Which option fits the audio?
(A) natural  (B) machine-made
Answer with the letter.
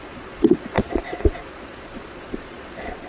B